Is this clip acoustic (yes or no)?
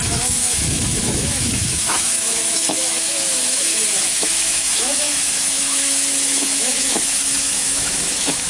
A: no